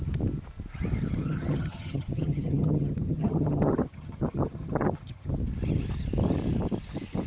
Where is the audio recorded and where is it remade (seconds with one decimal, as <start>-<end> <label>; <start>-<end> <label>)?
0.0-1.2 recorded; 1.2-5.3 remade; 5.3-7.3 recorded